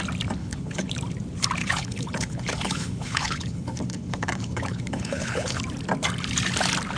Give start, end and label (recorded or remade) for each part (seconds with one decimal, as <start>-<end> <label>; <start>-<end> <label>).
0.0-0.4 recorded; 0.4-0.9 remade; 0.9-1.6 recorded; 1.6-5.6 remade; 5.6-7.0 recorded